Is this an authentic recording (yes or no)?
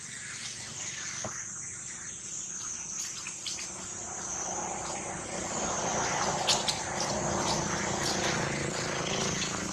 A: yes